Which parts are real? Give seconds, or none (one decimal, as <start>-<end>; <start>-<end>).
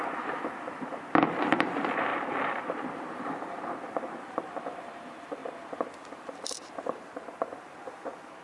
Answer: 5.4-6.2